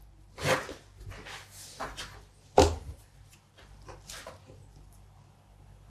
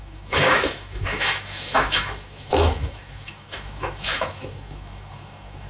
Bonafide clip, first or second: first